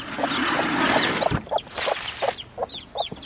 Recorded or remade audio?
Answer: recorded